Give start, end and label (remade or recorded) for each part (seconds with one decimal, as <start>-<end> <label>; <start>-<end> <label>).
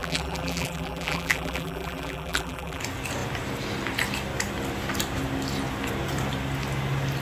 0.0-2.8 remade; 2.8-7.2 recorded